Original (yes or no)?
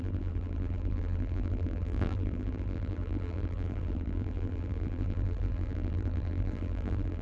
no